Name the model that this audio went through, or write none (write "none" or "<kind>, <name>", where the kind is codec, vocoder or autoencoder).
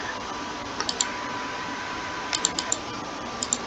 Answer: vocoder, BigVGAN v2